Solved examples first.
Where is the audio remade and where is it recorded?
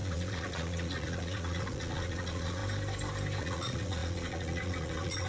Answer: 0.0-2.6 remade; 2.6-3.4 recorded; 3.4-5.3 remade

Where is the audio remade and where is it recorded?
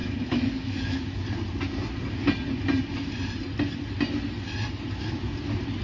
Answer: 0.0-1.2 remade; 1.2-5.8 recorded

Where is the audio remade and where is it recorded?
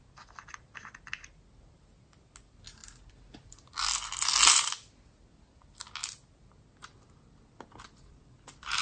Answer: 0.0-8.8 recorded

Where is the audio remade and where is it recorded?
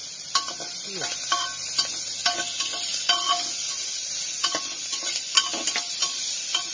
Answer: 0.0-6.7 recorded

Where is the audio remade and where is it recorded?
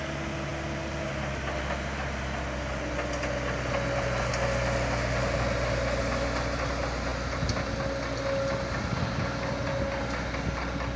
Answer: 0.0-11.0 recorded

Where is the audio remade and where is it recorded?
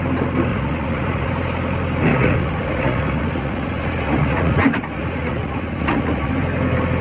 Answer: 0.0-0.5 recorded; 0.5-1.3 remade; 1.3-2.1 recorded; 2.1-6.3 remade; 6.3-7.0 recorded